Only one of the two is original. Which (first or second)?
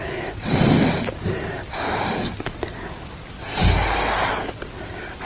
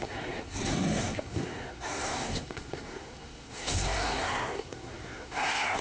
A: first